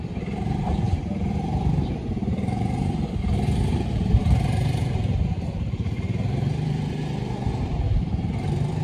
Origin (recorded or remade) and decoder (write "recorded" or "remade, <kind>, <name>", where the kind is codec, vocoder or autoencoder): remade, vocoder, BigVGAN v2